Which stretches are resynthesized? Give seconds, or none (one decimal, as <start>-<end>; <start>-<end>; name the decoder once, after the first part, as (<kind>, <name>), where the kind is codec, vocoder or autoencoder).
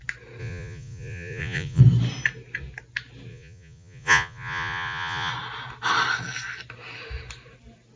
0.4-1.8 (vocoder, Vocos); 3.3-5.3